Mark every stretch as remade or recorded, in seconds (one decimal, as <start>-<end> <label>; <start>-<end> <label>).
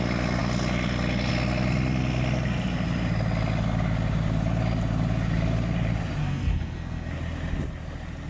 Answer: 0.0-6.2 recorded; 6.2-7.1 remade; 7.1-8.3 recorded